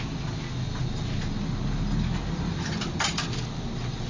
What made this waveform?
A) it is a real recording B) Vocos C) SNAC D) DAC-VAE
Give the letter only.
A